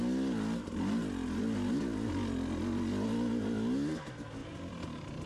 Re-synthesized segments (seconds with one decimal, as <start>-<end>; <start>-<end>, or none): 4.4-5.3